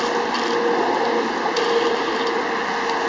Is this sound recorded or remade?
recorded